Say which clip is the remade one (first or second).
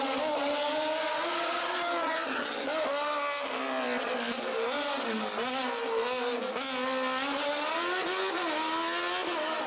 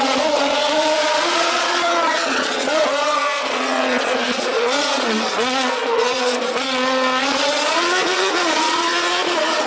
second